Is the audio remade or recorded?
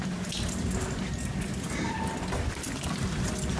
recorded